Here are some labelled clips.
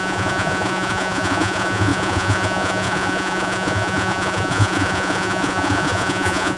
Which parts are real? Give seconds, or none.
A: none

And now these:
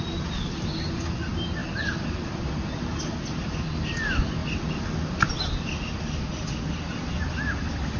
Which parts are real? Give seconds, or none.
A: 0.0-8.0